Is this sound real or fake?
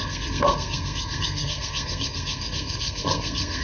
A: fake